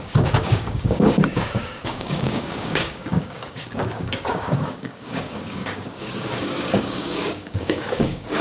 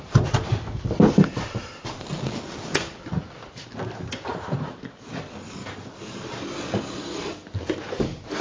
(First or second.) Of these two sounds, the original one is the second